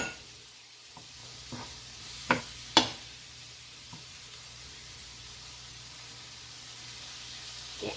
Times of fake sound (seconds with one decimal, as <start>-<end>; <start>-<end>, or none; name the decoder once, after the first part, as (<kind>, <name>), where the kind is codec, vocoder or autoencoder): 1.2-2.4 (vocoder, BigVGAN v2); 2.9-6.1